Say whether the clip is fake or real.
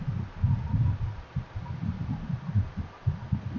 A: real